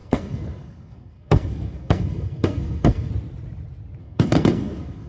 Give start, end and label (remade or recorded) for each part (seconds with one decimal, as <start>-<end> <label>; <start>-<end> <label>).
0.0-3.1 remade; 3.1-4.0 recorded; 4.0-5.1 remade

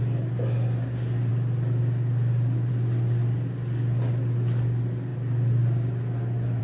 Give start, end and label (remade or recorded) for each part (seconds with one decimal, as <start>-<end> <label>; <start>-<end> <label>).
0.0-6.6 recorded

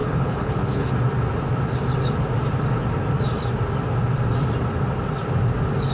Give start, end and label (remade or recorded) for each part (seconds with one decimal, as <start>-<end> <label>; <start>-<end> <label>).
0.0-0.9 remade; 0.9-5.9 recorded